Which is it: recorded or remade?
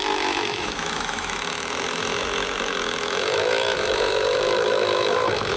remade